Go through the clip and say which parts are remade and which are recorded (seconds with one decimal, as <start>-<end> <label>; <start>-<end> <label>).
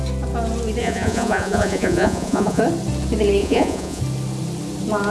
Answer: 0.0-0.8 recorded; 0.8-2.6 remade; 2.6-3.4 recorded; 3.4-4.0 remade; 4.0-5.1 recorded